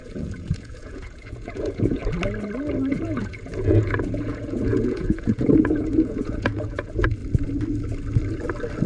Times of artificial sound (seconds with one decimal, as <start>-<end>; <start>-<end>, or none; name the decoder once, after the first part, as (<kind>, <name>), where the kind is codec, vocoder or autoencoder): 0.0-2.0 (vocoder, Vocos); 2.9-7.2